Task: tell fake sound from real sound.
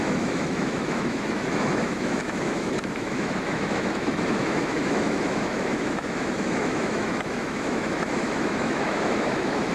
fake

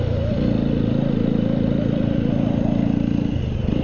real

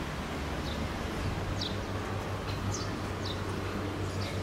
real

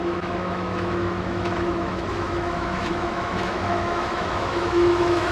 fake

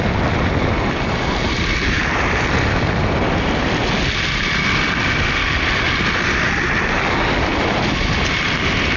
real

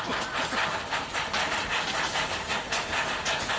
real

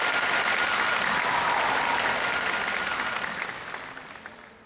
real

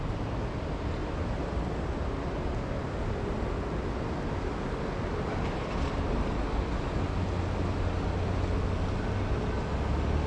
real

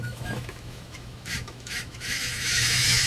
fake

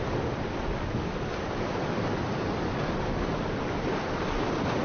real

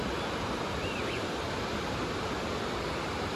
real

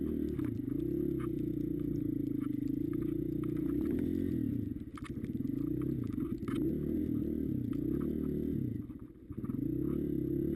real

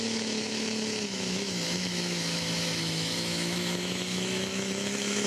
fake